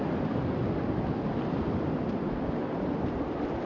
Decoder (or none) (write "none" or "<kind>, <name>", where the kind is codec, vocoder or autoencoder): none